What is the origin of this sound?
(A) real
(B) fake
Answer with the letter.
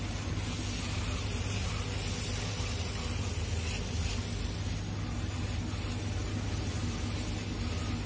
A